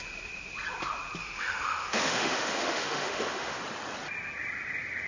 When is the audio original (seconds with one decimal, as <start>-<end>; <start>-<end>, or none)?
0.0-1.2; 3.6-5.1